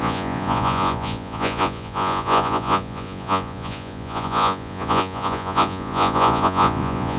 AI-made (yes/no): yes